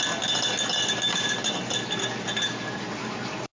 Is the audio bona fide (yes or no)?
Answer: yes